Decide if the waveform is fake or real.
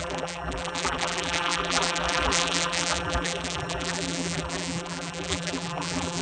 fake